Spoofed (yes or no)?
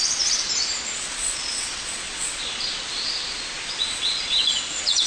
yes